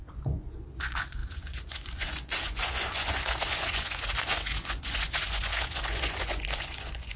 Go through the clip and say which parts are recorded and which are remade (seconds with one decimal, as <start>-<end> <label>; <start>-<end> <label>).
0.0-7.2 remade